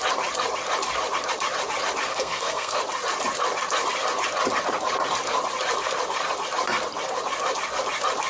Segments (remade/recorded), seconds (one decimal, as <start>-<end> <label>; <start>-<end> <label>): 0.0-2.1 recorded; 2.1-2.8 remade; 2.8-8.3 recorded